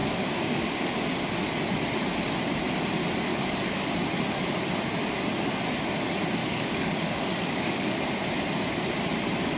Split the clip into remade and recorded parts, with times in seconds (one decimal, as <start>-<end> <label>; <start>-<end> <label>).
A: 0.0-0.9 remade; 0.9-3.3 recorded; 3.3-4.0 remade; 4.0-6.4 recorded; 6.4-8.0 remade; 8.0-9.6 recorded